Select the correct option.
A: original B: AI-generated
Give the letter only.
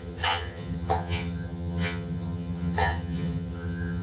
B